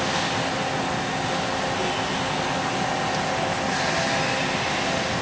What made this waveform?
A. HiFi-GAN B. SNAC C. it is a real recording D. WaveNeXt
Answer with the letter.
C